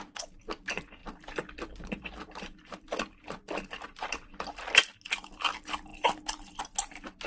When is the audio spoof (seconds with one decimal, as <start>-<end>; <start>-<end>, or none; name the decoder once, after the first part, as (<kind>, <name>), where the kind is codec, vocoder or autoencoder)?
1.0-4.6 (vocoder, BigVGAN v2)